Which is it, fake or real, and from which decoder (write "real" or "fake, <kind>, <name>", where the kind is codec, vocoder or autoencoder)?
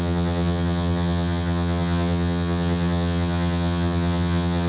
fake, vocoder, HiFi-GAN